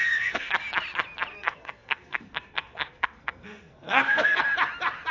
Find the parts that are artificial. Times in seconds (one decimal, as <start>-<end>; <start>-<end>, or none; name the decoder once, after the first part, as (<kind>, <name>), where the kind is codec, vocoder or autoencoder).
0.0-0.5 (codec, SNAC); 1.3-4.4